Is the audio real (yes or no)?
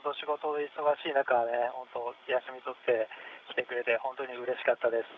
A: yes